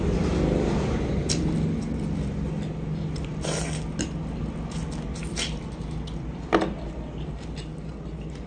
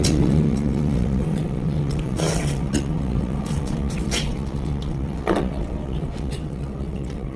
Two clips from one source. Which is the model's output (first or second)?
second